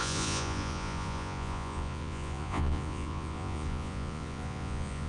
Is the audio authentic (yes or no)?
no